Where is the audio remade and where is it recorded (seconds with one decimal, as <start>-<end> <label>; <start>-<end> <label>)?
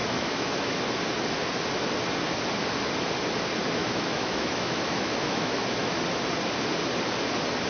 0.0-0.8 remade; 0.8-3.8 recorded; 3.8-6.0 remade; 6.0-7.7 recorded